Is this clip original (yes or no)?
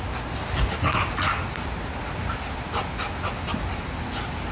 yes